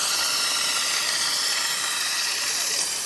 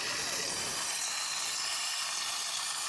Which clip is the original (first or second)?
second